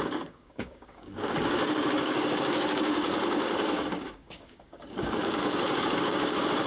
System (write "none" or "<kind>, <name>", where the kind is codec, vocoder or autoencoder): codec, DAC